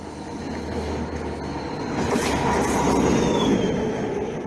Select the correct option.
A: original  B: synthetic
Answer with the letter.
A